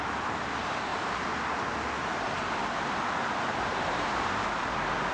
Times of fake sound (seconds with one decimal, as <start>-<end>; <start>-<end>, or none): 3.7-4.5